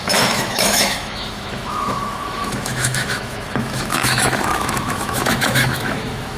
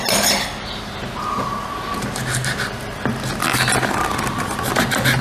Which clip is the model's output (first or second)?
first